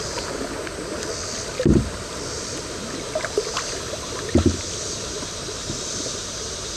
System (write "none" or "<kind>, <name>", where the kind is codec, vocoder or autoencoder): none